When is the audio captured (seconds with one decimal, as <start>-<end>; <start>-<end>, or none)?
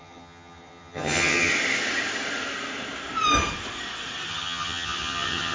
1.5-4.3